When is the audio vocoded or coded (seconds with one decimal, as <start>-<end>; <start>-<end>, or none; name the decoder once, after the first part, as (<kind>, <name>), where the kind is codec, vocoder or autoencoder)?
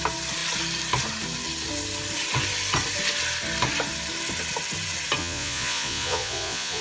5.2-6.8 (vocoder, Vocos)